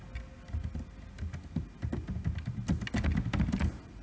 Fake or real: real